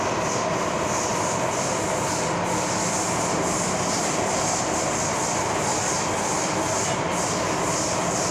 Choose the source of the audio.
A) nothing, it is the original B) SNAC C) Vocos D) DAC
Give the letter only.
A